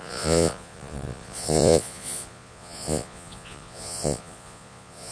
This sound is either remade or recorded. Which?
remade